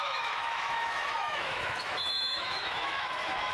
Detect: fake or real fake